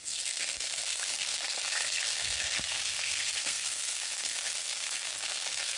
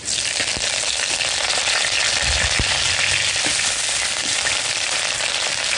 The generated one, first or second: first